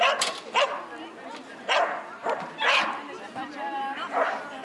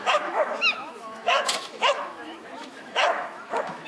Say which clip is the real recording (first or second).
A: first